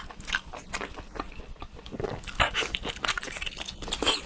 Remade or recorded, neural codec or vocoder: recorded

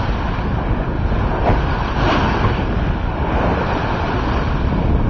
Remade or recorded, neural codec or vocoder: recorded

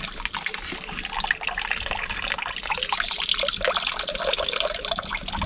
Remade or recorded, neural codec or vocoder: recorded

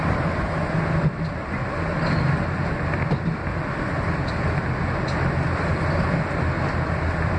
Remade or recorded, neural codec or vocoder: recorded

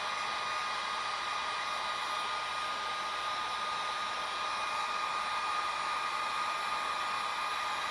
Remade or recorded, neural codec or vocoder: recorded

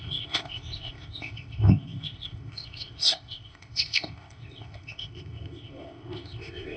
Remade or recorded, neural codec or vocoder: remade, codec, ZipCodec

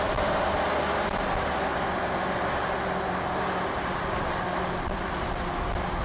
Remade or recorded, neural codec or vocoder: recorded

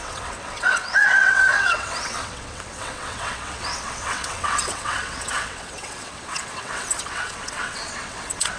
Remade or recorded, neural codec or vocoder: remade, vocoder, WaveNeXt